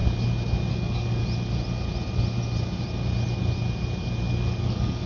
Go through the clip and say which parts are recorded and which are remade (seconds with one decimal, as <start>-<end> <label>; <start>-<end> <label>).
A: 0.0-0.7 recorded; 0.7-1.2 remade; 1.2-4.3 recorded; 4.3-5.1 remade